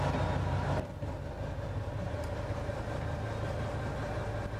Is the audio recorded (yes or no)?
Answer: yes